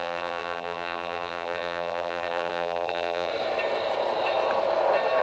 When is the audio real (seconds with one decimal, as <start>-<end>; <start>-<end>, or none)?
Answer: 3.3-5.2